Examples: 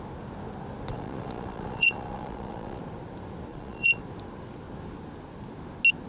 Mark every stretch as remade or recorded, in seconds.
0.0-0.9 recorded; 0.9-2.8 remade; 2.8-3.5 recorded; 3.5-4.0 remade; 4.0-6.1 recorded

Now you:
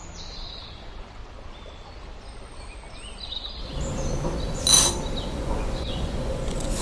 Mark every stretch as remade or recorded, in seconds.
0.0-0.7 recorded; 0.7-1.2 remade; 1.2-5.3 recorded; 5.3-6.8 remade